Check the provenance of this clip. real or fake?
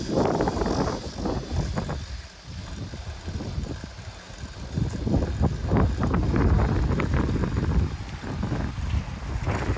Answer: real